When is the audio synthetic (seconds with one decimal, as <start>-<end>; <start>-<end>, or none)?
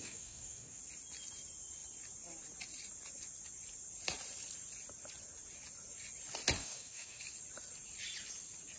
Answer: 0.0-0.8; 6.6-7.2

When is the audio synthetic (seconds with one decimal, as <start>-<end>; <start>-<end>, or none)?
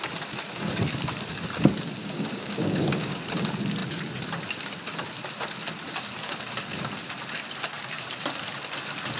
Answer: 2.0-3.2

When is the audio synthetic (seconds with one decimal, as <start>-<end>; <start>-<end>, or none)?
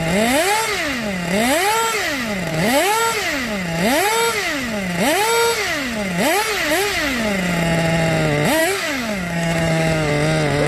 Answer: 2.5-3.0; 8.6-10.1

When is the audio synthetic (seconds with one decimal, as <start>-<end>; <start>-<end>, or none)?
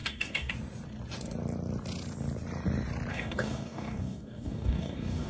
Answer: 0.0-0.5; 3.1-5.3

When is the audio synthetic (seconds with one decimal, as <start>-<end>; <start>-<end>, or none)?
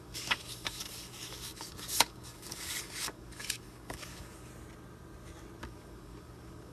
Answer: 0.0-4.5; 5.6-6.7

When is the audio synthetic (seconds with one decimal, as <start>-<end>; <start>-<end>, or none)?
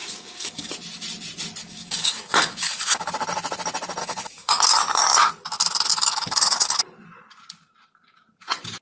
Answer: 0.0-0.7; 1.6-3.1; 4.0-5.3; 5.9-6.8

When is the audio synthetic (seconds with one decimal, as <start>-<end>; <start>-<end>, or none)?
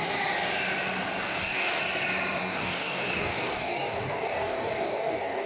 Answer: 1.2-1.8; 2.4-5.5